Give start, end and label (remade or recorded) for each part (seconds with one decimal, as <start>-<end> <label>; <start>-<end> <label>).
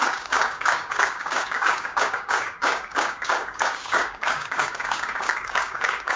0.0-6.2 remade